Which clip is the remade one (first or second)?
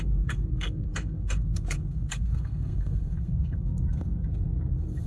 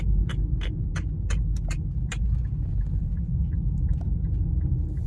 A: first